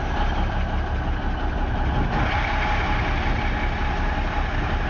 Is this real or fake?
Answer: real